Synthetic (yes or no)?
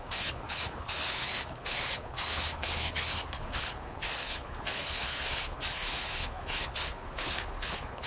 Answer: yes